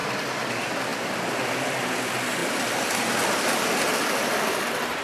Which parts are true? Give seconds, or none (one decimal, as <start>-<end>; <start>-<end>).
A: 0.5-0.9; 1.8-2.4; 4.6-5.0